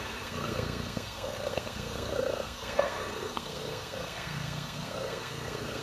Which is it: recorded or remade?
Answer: remade